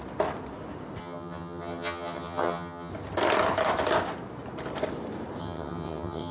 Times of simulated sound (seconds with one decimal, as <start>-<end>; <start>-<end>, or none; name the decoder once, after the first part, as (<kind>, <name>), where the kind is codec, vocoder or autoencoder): 1.0-2.9 (vocoder, HiFi-GAN); 5.4-6.3